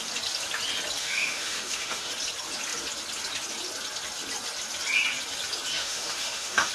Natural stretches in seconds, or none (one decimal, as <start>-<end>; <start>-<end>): 0.0-1.0; 2.1-5.8